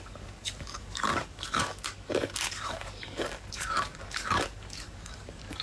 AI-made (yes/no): yes